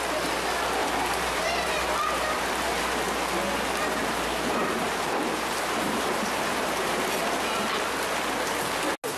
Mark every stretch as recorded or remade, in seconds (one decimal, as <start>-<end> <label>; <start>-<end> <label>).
0.0-0.8 recorded; 0.8-2.8 remade; 2.8-4.0 recorded; 4.0-7.0 remade; 7.0-9.2 recorded

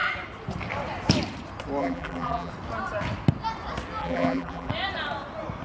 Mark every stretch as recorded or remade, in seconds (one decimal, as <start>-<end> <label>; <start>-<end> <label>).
0.0-1.8 recorded; 1.8-2.5 remade; 2.5-4.0 recorded; 4.0-4.7 remade; 4.7-5.6 recorded

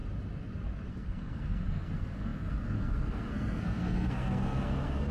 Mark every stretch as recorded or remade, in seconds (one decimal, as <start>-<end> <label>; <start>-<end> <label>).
0.0-0.9 recorded; 0.9-5.1 remade

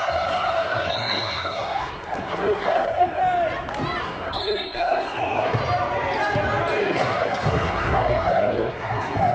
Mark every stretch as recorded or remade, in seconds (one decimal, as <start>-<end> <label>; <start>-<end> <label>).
0.0-3.2 remade; 3.2-4.0 recorded; 4.0-5.6 remade; 5.6-6.8 recorded; 6.8-9.3 remade

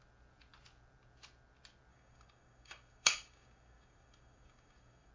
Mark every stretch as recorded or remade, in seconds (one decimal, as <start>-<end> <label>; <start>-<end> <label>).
0.0-1.9 recorded; 1.9-5.1 remade

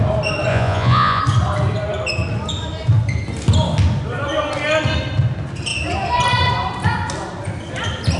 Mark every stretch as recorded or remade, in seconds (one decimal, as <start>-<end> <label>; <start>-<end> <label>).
0.0-0.5 recorded; 0.5-1.2 remade; 1.2-8.2 recorded